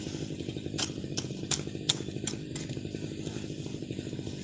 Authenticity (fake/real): real